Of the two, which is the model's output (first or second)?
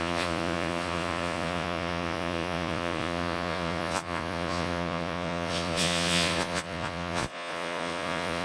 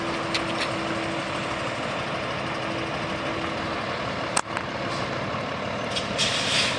first